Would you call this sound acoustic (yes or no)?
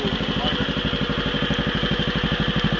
yes